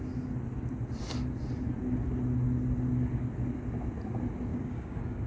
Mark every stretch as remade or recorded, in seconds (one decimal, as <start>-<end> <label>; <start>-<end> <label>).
0.0-4.5 recorded; 4.5-5.3 remade